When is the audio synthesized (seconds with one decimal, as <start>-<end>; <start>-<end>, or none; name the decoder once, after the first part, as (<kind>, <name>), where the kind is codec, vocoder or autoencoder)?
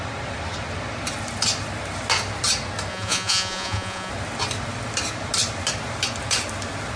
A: 2.9-4.1 (vocoder, Vocos)